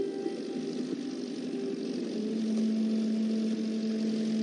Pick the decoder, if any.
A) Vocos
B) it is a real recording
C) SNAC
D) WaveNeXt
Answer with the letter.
B